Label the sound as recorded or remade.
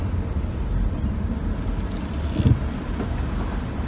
recorded